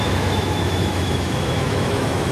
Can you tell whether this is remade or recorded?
remade